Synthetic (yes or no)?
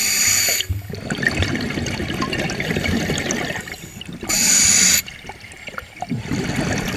no